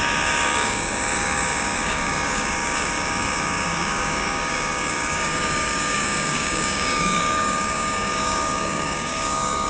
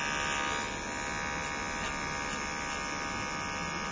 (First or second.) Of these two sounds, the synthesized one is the first